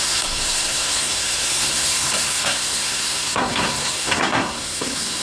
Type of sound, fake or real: fake